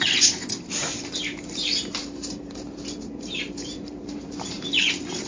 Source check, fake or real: fake